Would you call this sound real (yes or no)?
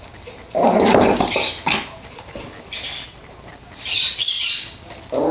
yes